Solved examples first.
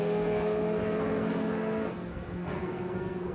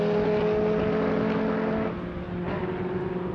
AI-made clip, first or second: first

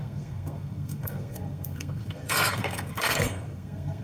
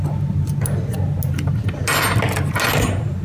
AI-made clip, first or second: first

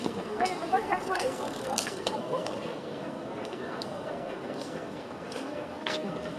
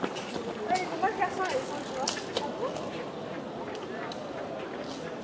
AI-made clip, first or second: first